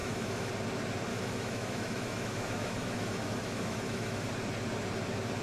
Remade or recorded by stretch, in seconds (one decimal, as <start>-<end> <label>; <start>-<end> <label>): 0.0-0.5 remade; 0.5-1.1 recorded; 1.1-4.3 remade; 4.3-5.4 recorded